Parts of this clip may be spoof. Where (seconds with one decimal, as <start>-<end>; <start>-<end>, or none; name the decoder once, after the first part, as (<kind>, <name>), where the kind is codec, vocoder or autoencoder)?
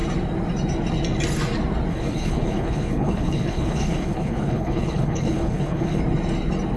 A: 1.9-6.0 (codec, HILCodec)